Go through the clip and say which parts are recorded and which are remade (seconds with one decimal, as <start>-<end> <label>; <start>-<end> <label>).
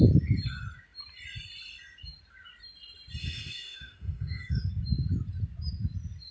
0.0-3.2 recorded; 3.2-4.7 remade; 4.7-6.3 recorded